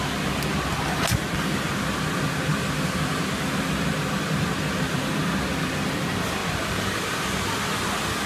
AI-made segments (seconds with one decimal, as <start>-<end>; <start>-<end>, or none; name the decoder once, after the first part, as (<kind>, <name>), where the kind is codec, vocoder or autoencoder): 2.5-5.2 (vocoder, BigVGAN v2); 6.4-8.3